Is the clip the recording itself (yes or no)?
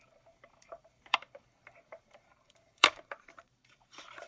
no